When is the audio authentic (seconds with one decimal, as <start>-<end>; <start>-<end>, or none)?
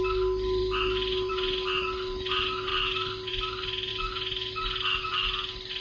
0.0-5.8